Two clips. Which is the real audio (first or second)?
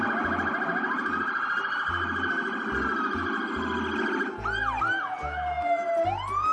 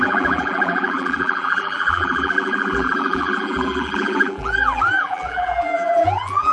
first